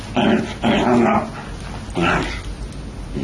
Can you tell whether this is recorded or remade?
recorded